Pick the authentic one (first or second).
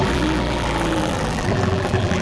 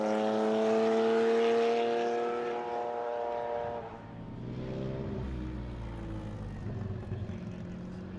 second